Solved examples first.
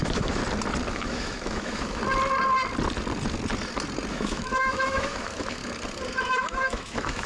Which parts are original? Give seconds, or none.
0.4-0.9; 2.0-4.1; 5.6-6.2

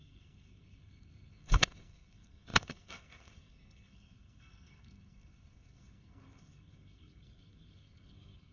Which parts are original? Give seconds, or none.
none

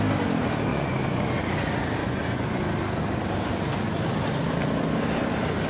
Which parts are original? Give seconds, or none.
0.0-0.7; 1.4-2.0; 2.6-5.7

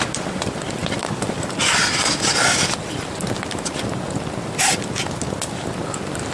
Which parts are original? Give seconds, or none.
0.0-6.3